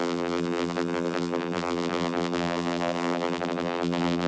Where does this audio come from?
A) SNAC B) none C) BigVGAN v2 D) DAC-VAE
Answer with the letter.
C